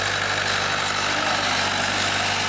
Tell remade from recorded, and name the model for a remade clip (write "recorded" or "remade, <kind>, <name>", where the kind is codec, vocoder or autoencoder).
recorded